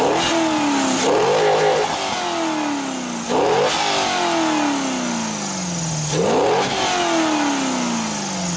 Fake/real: real